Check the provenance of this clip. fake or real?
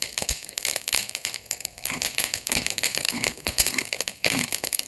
fake